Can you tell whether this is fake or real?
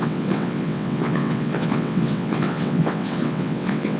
fake